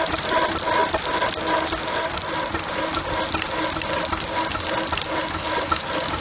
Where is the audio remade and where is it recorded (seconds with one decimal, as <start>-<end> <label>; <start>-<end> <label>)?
0.0-6.2 recorded